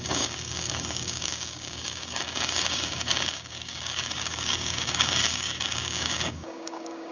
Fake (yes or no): yes